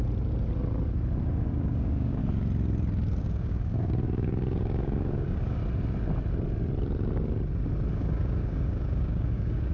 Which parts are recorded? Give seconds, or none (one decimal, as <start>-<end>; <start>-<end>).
0.0-1.5; 2.2-3.2; 5.6-7.9